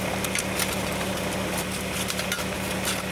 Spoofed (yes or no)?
no